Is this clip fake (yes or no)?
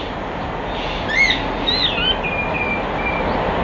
no